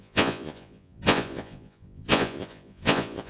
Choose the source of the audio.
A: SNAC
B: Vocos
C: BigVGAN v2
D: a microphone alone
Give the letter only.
B